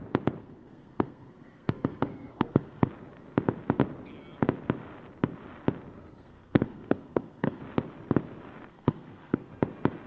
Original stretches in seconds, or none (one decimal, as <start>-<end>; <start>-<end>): 0.0-0.4; 2.9-6.1; 7.6-8.7; 9.5-10.1